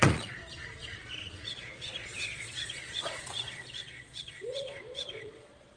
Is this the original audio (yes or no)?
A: no